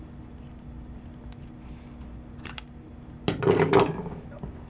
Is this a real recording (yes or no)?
yes